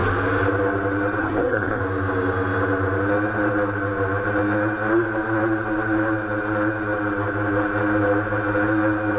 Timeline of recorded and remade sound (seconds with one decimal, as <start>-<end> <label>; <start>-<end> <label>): 0.0-1.2 recorded; 1.2-1.8 remade; 1.8-9.2 recorded